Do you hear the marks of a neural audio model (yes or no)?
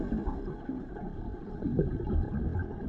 no